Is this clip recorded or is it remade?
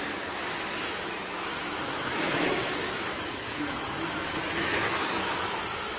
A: remade